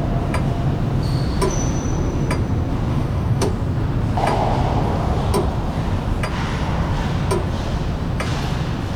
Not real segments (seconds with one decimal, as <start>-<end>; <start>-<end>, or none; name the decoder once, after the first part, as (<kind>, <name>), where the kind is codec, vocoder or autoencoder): 2.9-3.5 (codec, DAC)